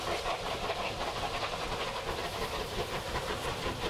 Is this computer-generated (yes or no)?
no